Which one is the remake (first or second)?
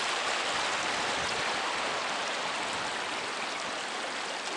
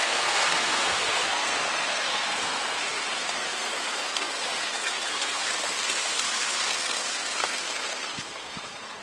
second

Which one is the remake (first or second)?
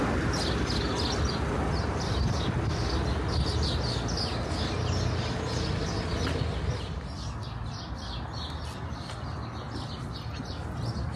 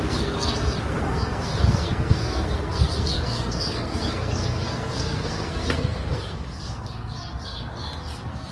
second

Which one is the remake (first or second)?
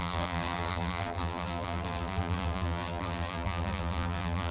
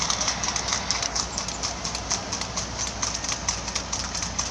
first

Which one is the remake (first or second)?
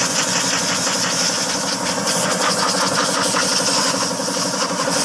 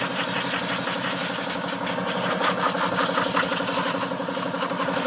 first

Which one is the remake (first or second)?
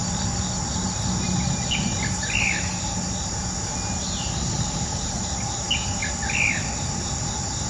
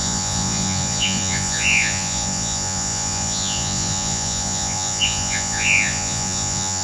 second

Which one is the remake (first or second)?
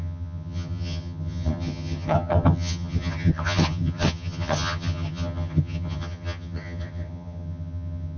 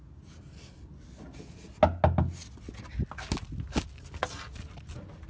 first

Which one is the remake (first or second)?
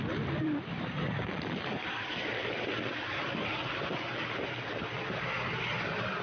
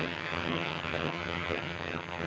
second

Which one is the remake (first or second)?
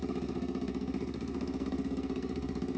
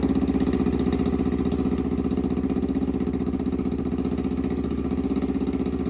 first